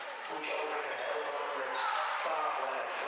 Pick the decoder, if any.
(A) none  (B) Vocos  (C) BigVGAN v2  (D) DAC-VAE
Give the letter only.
A